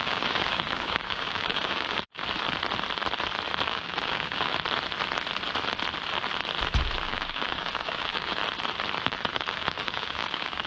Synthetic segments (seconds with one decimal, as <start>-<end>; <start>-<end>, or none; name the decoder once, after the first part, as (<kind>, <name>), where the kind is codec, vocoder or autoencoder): 0.0-2.2 (codec, DAC); 3.7-4.5; 6.9-8.4; 9.0-10.7